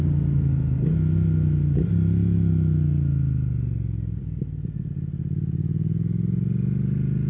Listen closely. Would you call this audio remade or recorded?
recorded